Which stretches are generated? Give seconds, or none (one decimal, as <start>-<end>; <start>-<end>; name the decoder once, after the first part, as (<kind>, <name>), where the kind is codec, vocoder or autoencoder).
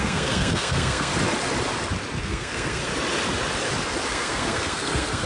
0.0-1.1 (codec, SNAC); 2.2-2.9; 4.1-5.3